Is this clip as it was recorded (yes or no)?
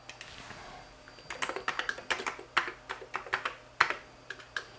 yes